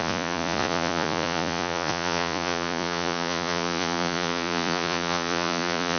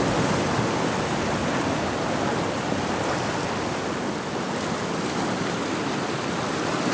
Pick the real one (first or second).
second